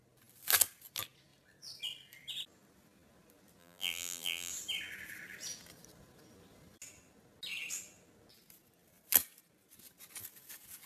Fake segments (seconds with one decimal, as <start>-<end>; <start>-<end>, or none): 3.6-4.5